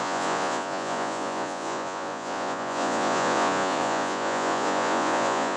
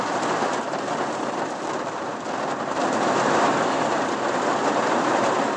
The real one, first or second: second